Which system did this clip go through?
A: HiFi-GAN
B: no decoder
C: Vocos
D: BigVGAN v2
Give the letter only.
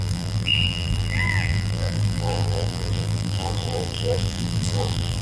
D